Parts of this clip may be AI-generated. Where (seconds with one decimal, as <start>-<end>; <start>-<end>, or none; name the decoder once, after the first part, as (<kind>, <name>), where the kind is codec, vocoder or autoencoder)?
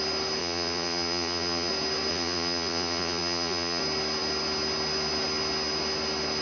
0.4-1.7 (vocoder, Vocos); 2.1-3.8